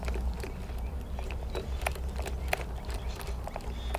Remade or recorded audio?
recorded